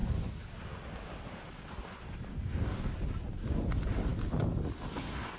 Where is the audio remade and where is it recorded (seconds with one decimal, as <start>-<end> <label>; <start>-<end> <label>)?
0.0-2.3 recorded; 2.3-2.9 remade; 2.9-5.4 recorded

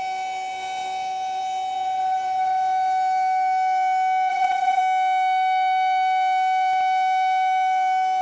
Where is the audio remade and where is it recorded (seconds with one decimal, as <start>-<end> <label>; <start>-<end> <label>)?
0.0-4.3 recorded; 4.3-4.8 remade; 4.8-8.2 recorded